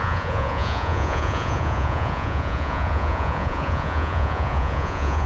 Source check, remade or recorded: remade